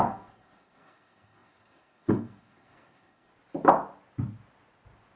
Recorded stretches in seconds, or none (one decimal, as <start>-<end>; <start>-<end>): 3.3-5.2